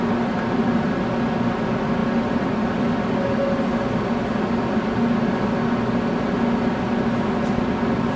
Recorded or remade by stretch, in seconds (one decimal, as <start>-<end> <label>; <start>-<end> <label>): 0.0-8.2 recorded